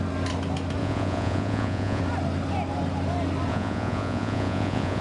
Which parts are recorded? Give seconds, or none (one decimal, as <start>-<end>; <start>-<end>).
0.0-0.8; 2.0-3.5